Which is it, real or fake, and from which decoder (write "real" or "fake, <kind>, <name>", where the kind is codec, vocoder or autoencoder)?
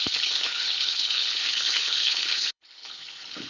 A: fake, codec, HILCodec